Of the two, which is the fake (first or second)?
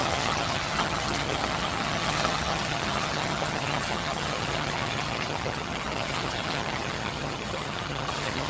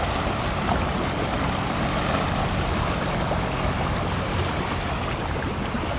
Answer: first